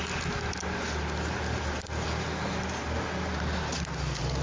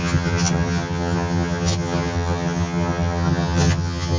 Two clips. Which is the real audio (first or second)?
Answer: first